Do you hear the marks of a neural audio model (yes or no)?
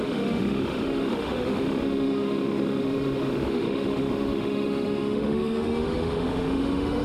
yes